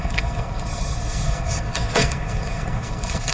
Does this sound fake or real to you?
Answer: fake